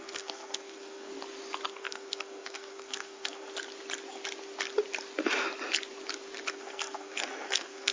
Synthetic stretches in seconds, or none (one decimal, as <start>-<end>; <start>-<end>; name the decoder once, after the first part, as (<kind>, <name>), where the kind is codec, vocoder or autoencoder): 0.0-1.1 (codec, SNAC); 1.7-3.5; 6.5-7.9